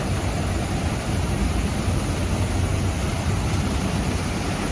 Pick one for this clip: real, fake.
real